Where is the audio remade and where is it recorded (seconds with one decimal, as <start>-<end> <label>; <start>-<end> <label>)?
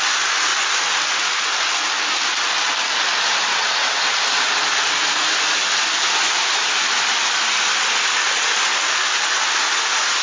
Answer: 0.0-3.5 recorded; 3.5-4.0 remade; 4.0-10.2 recorded